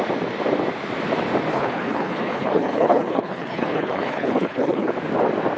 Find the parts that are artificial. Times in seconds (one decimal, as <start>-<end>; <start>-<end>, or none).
1.5-4.9